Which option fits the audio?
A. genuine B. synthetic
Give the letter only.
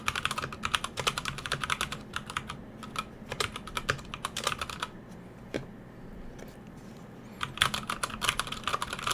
A